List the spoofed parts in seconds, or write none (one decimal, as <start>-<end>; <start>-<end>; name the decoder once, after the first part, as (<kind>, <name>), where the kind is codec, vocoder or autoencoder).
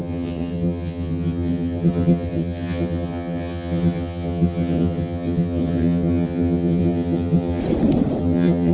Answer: 0.0-7.6 (vocoder, HiFi-GAN); 8.2-8.7